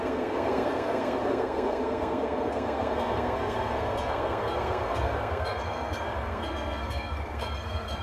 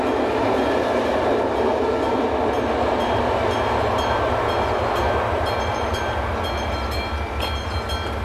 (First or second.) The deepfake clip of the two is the first